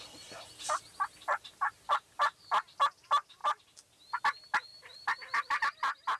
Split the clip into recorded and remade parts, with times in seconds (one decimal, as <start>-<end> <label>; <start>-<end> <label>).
0.0-3.4 recorded; 3.4-4.2 remade; 4.2-4.7 recorded; 4.7-5.6 remade; 5.6-6.2 recorded